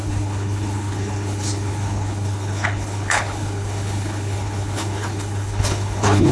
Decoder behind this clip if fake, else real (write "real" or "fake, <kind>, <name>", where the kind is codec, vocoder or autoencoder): fake, codec, HILCodec